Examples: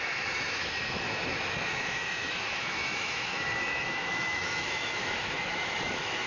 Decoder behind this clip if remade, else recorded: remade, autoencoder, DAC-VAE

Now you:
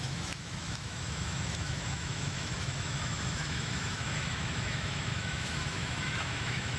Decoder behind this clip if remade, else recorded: remade, autoencoder, DAC-VAE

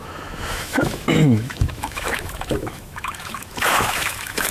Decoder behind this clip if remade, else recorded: remade, autoencoder, DAC-VAE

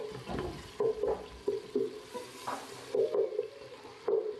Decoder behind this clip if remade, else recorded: recorded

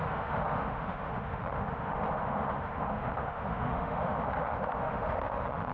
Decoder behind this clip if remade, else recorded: remade, autoencoder, DAC-VAE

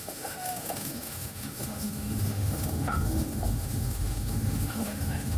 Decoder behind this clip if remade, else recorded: remade, autoencoder, DAC-VAE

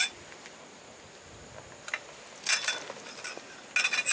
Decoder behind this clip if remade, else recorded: recorded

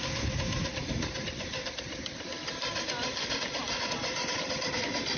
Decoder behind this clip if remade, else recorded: recorded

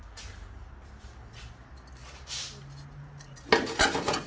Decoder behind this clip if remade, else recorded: recorded